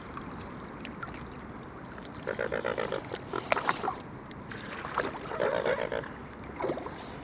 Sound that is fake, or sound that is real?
fake